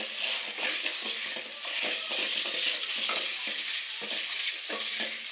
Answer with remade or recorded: recorded